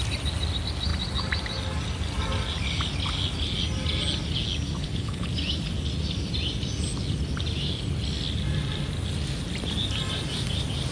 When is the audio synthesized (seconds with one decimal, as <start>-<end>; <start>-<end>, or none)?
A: 4.8-5.3